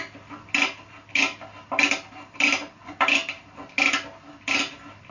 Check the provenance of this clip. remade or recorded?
recorded